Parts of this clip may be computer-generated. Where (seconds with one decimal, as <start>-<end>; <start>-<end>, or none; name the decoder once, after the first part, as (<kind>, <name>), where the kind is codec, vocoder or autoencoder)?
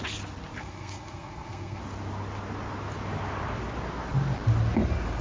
0.6-1.8 (codec, SNAC)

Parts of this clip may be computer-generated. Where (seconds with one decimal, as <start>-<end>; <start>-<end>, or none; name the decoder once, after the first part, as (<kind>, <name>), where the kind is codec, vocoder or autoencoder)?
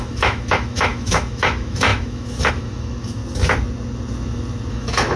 0.0-3.2 (autoencoder, DAC-VAE); 4.7-5.2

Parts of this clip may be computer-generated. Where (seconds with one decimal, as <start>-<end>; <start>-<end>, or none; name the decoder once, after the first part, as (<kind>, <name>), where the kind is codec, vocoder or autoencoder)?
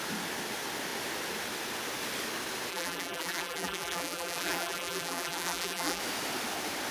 2.7-6.0 (vocoder, BigVGAN v2)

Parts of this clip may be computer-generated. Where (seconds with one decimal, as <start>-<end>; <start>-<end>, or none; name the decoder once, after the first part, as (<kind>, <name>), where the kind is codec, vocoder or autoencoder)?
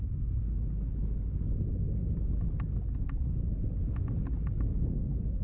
none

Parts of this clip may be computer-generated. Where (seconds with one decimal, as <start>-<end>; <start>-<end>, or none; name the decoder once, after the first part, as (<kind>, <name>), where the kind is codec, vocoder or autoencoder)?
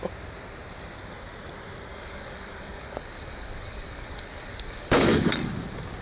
1.9-5.5 (codec, DAC)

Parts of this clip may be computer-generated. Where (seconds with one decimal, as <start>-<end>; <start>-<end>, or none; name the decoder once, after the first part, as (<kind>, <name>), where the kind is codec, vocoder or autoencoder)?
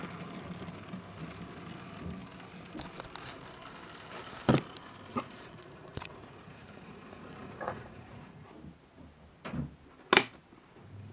5.1-8.5 (vocoder, Vocos)